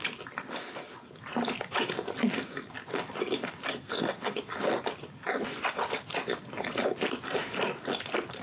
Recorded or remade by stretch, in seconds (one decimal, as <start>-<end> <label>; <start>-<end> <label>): 0.0-3.7 recorded; 3.7-4.4 remade; 4.4-8.4 recorded